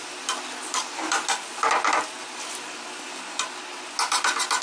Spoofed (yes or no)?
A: no